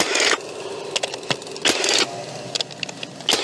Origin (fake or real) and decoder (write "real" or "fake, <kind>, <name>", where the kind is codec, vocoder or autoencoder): real